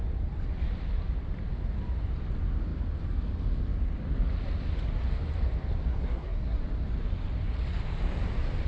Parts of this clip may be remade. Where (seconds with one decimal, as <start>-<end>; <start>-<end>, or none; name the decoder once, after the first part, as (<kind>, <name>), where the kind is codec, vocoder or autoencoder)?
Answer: 5.9-6.6 (codec, SNAC)